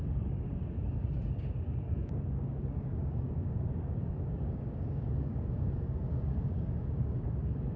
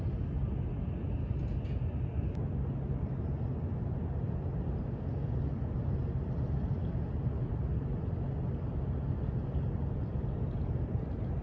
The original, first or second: second